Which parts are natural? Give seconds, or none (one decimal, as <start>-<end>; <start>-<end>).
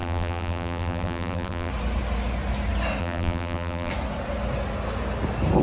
1.7-3.0; 3.9-5.6